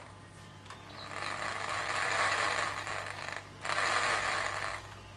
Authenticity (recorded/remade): recorded